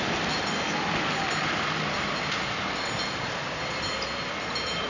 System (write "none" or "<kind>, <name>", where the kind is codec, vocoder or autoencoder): none